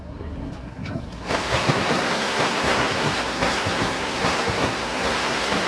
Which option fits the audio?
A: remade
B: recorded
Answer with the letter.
A